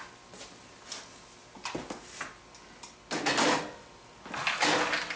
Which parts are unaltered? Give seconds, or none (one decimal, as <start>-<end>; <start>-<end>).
0.0-5.2